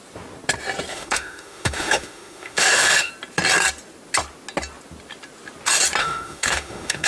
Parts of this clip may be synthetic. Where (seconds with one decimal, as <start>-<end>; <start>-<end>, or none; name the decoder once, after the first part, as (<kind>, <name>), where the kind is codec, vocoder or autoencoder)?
0.9-3.1 (autoencoder, DAC-VAE); 6.0-7.1

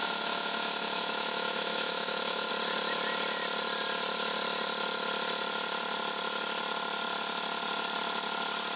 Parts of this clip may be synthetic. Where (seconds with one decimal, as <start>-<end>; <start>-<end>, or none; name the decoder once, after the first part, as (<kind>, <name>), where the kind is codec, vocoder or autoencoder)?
0.0-2.5 (autoencoder, DAC-VAE)

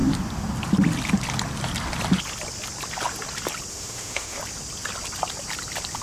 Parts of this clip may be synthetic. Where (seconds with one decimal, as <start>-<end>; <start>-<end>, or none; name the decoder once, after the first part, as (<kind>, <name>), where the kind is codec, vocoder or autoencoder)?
3.7-4.4 (autoencoder, DAC-VAE)

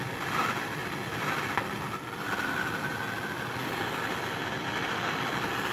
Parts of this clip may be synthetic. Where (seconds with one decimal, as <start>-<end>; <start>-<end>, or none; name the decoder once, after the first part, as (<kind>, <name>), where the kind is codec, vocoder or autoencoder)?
none

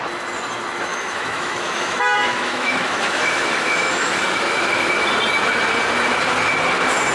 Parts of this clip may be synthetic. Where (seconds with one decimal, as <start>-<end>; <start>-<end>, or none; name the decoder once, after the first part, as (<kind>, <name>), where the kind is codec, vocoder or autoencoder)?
0.9-4.9 (autoencoder, DAC-VAE)

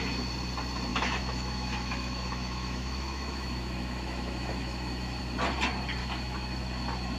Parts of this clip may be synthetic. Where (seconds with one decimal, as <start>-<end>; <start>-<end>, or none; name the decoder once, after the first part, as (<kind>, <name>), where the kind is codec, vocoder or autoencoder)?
0.9-5.2 (autoencoder, DAC-VAE); 6.0-6.6